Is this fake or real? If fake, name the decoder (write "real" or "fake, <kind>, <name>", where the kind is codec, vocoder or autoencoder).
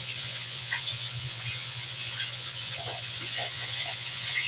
fake, vocoder, Vocos